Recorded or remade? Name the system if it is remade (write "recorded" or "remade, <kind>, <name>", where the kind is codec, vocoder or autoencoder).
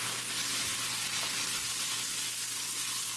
recorded